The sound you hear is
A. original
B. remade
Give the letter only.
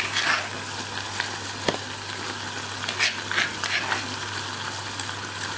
A